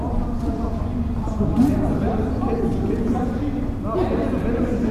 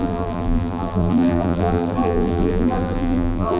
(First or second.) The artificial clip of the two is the second